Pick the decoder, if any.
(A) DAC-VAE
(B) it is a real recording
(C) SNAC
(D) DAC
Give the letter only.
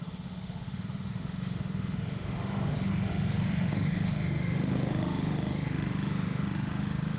A